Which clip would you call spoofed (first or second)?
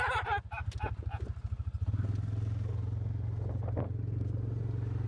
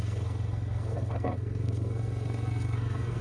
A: second